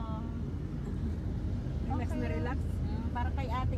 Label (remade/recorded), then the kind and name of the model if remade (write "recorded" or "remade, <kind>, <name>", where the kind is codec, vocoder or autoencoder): recorded